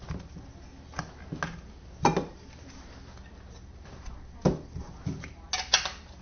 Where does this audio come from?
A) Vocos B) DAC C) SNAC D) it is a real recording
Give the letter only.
D